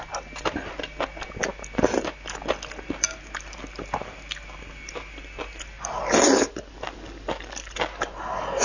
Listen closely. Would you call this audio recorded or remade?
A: recorded